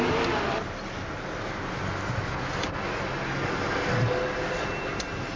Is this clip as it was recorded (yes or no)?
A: yes